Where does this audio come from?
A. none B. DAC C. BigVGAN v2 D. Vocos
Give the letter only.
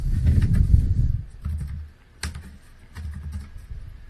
A